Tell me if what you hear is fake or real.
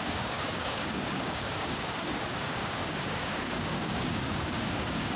fake